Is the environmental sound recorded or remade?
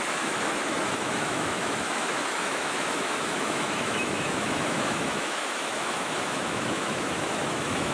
remade